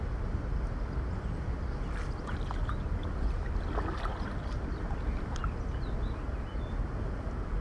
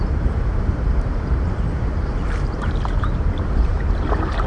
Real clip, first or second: first